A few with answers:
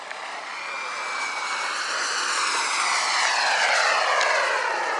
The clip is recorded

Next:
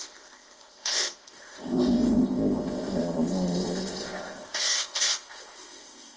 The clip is remade